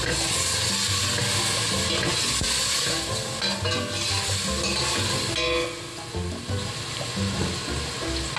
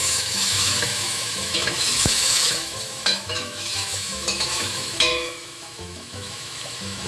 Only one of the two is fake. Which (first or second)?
second